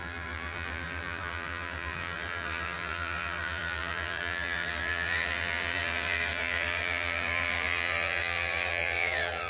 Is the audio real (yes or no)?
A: no